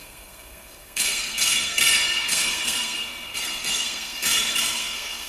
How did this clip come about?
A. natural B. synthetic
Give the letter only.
B